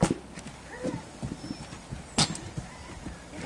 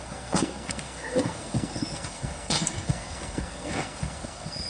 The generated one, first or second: second